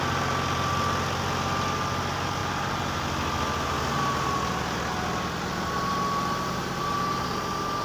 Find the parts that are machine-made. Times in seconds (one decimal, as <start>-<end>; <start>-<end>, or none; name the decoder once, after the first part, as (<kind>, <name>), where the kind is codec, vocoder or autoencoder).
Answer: none